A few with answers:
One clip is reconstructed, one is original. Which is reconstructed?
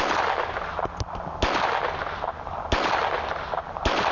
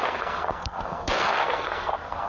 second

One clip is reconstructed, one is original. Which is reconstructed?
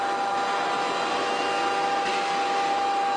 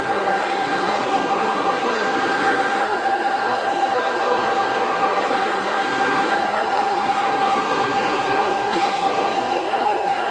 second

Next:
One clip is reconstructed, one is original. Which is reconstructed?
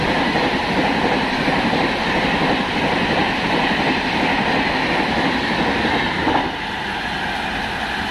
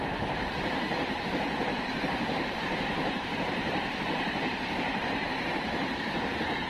second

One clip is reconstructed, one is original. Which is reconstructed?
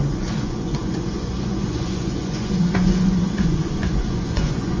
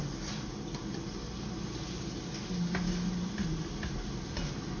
first